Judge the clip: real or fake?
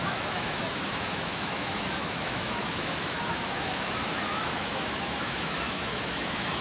fake